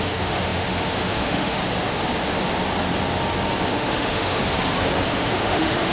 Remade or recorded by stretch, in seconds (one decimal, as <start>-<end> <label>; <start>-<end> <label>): 0.0-1.6 remade; 1.6-3.7 recorded; 3.7-4.4 remade; 4.4-5.1 recorded; 5.1-5.9 remade